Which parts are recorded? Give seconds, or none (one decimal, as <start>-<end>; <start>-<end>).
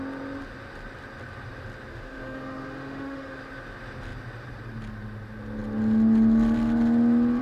0.0-1.9; 3.4-7.4